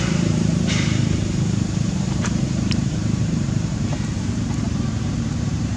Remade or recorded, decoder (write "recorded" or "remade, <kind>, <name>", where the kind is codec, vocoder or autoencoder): remade, vocoder, BigVGAN v2